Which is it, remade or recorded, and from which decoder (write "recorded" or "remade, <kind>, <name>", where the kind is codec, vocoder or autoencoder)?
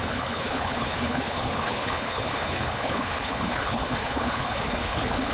remade, codec, HILCodec